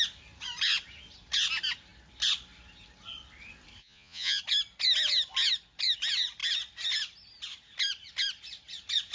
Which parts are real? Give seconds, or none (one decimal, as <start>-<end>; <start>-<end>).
0.0-3.8; 4.4-9.1